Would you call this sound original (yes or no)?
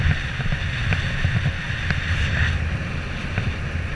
yes